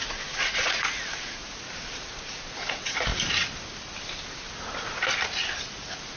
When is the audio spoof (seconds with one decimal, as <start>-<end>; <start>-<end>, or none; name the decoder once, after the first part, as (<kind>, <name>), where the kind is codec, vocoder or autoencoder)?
0.0-1.4 (vocoder, Vocos); 1.9-3.1; 5.6-6.2